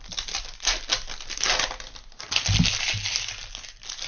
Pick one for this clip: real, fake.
real